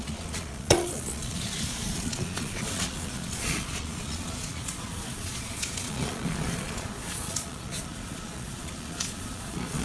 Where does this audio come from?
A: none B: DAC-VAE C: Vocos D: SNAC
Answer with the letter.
C